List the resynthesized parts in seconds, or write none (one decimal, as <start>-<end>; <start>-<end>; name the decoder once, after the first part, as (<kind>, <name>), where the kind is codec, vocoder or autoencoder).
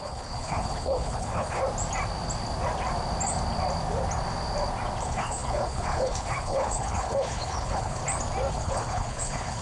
0.0-1.6 (codec, HILCodec); 5.0-8.0; 8.5-9.6